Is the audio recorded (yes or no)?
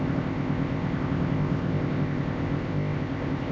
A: no